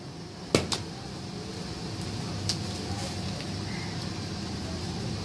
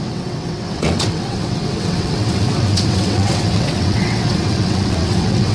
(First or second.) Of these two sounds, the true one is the first